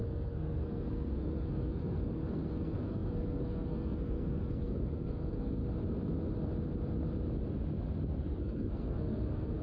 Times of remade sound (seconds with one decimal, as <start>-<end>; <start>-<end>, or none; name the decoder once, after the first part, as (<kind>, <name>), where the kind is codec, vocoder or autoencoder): 0.0-5.6 (codec, SNAC); 8.2-9.6